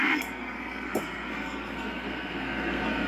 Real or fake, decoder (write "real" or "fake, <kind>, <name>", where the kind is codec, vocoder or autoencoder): fake, codec, SNAC